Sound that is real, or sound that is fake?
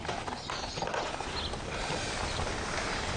real